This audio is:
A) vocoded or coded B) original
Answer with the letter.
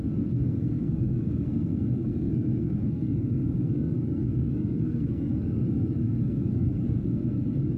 A